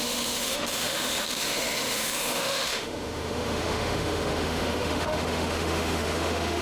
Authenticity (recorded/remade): remade